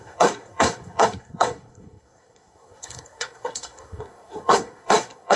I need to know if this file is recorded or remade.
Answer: remade